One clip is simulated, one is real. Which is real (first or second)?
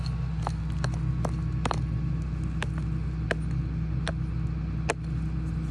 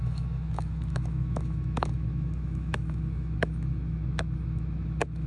first